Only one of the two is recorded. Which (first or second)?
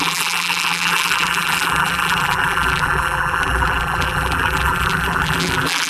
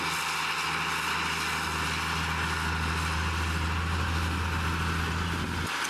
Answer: second